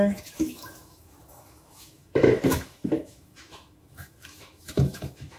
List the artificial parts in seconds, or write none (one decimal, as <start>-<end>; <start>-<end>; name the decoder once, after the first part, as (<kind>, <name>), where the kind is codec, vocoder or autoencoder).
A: 0.0-5.4 (autoencoder, DAC-VAE)